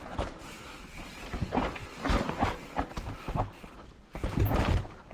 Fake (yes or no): no